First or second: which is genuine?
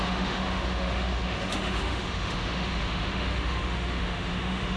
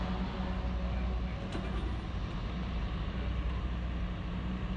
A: second